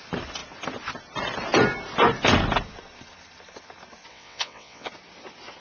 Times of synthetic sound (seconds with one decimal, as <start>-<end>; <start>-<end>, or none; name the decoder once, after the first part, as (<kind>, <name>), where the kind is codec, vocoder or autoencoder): 4.1-4.9 (vocoder, WaveNeXt)